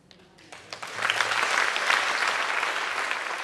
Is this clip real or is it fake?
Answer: real